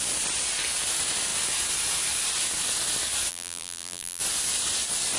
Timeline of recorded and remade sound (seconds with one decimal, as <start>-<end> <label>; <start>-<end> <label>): 0.0-3.3 recorded; 3.3-4.2 remade; 4.2-5.2 recorded